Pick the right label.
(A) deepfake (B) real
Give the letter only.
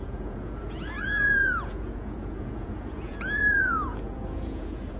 A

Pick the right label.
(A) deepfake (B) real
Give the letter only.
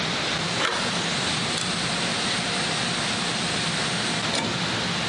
B